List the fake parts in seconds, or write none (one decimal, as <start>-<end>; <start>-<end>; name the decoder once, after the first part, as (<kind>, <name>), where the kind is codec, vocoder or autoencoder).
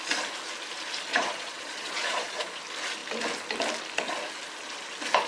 1.1-2.6 (vocoder, Vocos)